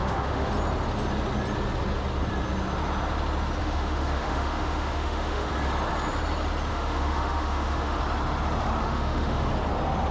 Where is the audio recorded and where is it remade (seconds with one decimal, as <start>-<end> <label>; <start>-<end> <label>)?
0.0-0.5 remade; 0.5-3.6 recorded; 3.6-5.5 remade; 5.5-6.7 recorded; 6.7-8.0 remade; 8.0-8.8 recorded; 8.8-9.5 remade; 9.5-10.1 recorded